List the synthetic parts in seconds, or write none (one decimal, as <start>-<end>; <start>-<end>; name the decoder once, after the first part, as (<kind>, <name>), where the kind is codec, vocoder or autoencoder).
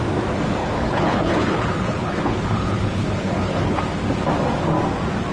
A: 0.6-3.8 (codec, HILCodec)